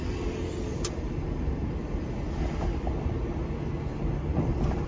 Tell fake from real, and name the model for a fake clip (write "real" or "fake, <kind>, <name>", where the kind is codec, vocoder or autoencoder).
real